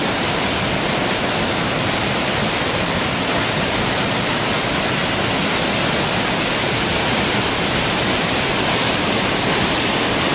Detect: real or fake real